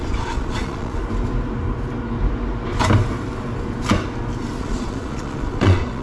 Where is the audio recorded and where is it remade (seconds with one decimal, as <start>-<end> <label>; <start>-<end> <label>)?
0.0-1.0 remade; 1.0-4.6 recorded; 4.6-6.0 remade